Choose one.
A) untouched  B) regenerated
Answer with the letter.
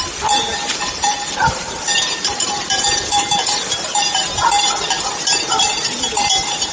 B